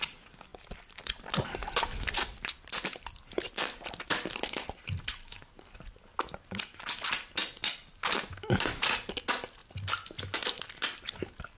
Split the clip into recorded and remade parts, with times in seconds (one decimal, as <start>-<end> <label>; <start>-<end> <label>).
0.0-0.5 recorded; 0.5-5.5 remade; 5.5-11.6 recorded